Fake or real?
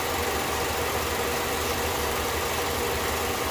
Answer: real